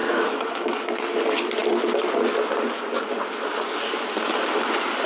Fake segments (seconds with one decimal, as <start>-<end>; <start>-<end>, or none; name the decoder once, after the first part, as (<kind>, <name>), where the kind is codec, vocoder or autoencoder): 0.0-0.7 (autoencoder, DAC-VAE)